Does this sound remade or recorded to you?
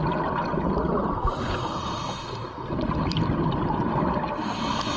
recorded